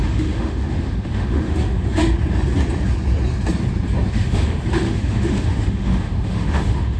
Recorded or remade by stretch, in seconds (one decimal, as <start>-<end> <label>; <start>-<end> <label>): 0.0-2.0 remade; 2.0-4.1 recorded; 4.1-7.0 remade